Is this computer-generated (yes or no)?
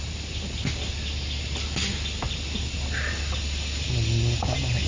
no